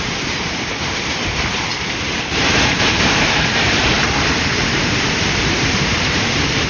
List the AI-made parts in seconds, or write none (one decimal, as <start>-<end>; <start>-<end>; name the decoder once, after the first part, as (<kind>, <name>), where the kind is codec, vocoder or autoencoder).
0.0-6.7 (vocoder, BigVGAN v2)